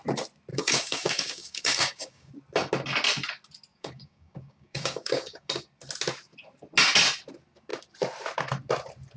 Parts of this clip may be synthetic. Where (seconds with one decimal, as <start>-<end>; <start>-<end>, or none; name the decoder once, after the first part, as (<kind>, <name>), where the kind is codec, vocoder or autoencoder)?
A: 0.5-2.3 (codec, DAC); 3.7-5.5